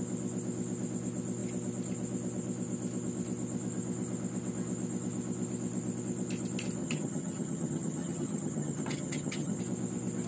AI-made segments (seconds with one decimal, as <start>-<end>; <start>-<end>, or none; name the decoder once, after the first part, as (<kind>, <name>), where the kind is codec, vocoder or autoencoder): 6.8-9.6 (vocoder, HiFi-GAN)

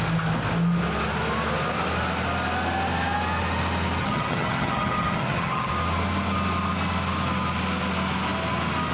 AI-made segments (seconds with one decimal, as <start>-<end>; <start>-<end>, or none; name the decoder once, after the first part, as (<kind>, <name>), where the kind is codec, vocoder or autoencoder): 4.0-5.7 (vocoder, HiFi-GAN)